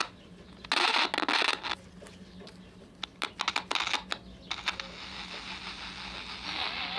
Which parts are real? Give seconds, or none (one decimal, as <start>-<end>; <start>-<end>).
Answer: 0.0-7.0